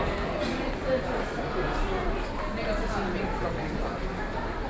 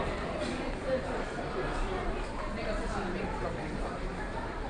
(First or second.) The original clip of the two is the first